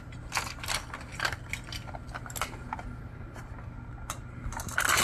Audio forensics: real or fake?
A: real